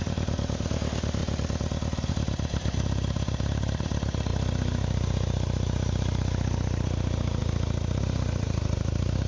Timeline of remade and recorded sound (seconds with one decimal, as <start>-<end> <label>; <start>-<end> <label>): 0.0-1.2 remade; 1.2-2.1 recorded; 2.1-4.3 remade; 4.3-4.8 recorded; 4.8-7.4 remade; 7.4-8.0 recorded; 8.0-9.3 remade